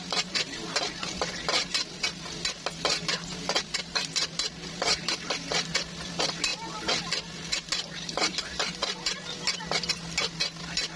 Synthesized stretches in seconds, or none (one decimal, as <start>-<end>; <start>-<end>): none